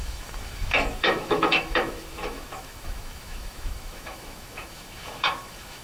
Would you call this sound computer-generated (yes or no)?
yes